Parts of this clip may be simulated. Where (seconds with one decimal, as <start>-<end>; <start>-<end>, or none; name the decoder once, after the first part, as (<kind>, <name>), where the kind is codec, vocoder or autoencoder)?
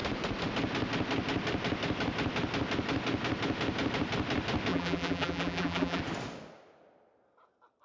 4.7-6.0 (vocoder, BigVGAN v2)